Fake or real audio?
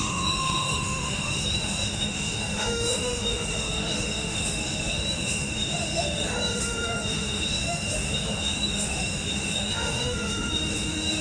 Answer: fake